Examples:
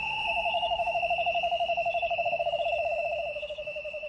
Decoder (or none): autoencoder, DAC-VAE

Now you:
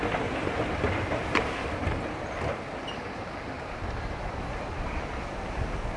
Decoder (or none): none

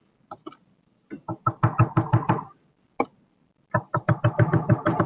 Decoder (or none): none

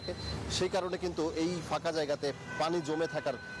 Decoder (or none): none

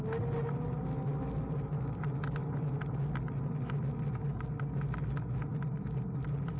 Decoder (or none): none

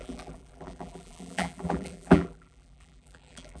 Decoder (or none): vocoder, BigVGAN v2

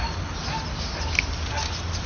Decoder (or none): none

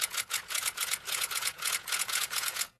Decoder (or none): vocoder, Vocos